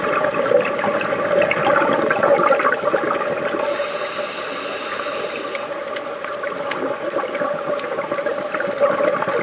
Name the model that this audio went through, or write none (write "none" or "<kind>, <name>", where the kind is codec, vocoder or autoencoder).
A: none